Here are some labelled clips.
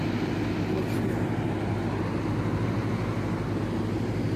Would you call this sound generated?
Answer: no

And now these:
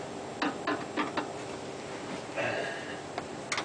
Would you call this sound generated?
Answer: no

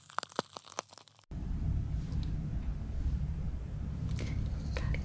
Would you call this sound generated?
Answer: no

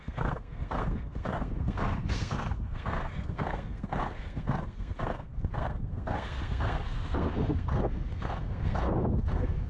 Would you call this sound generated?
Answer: yes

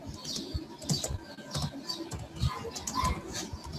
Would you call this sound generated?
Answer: no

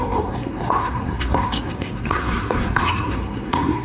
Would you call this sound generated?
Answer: yes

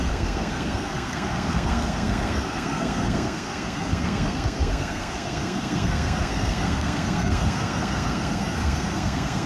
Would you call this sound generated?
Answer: yes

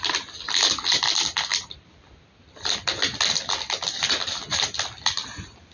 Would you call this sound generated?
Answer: no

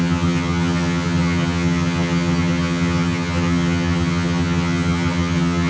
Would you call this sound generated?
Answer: yes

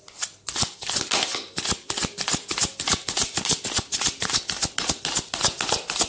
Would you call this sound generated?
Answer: no